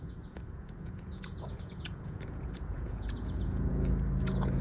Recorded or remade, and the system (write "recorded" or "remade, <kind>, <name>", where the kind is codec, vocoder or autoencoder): remade, vocoder, Vocos